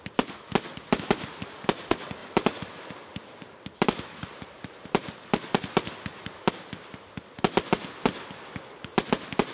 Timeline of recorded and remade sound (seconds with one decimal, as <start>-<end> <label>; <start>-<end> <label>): 0.0-2.2 recorded; 2.2-6.5 remade; 6.5-9.5 recorded